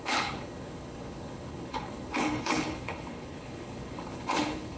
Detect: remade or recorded remade